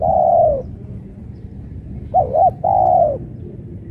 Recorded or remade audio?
recorded